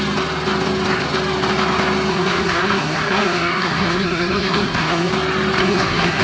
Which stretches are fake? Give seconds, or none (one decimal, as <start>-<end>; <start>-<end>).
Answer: 2.1-5.1; 5.6-6.2

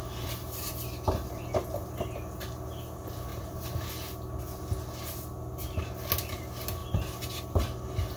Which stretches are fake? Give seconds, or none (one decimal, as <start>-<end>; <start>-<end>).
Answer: 3.3-3.9

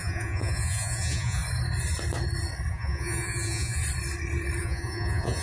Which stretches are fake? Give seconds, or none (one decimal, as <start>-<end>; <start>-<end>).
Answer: 0.0-1.4; 2.7-3.8; 4.6-5.4

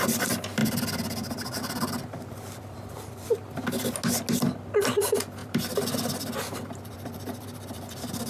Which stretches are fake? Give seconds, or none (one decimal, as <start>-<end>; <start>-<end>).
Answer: 0.6-3.9; 5.4-8.3

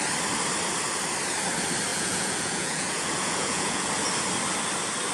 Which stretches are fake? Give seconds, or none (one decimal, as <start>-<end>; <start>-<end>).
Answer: 1.9-3.9

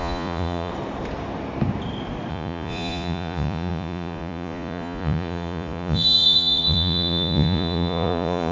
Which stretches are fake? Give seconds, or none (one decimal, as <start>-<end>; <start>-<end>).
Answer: 0.0-0.7; 2.3-8.5

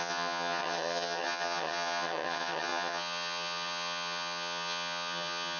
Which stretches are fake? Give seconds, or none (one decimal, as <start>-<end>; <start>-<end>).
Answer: 0.0-5.6

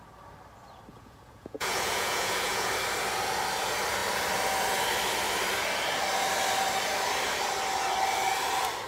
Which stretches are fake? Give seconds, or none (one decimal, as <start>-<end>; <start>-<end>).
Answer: 0.9-2.7